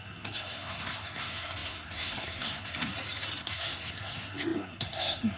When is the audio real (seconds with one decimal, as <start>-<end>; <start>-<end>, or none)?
2.9-3.4